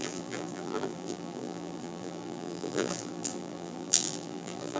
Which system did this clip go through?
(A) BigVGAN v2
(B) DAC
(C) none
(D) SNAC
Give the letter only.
A